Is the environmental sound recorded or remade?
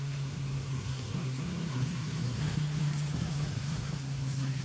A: remade